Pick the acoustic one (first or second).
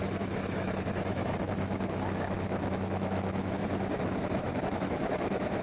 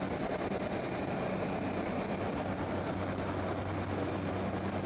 second